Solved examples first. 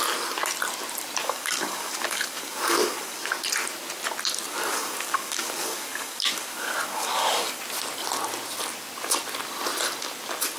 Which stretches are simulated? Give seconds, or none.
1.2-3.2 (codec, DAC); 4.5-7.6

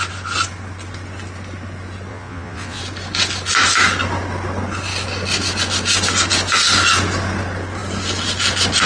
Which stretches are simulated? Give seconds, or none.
2.1-2.8 (vocoder, Vocos)

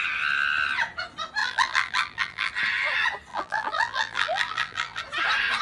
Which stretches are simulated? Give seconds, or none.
1.4-2.5 (vocoder, BigVGAN v2); 3.3-5.0